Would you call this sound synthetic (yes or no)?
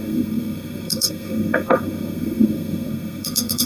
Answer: yes